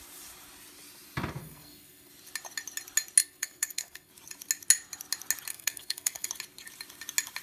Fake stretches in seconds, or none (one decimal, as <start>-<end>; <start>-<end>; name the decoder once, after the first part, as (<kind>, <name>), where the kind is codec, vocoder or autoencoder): 1.4-2.1 (codec, SNAC); 3.2-4.1; 5.5-6.3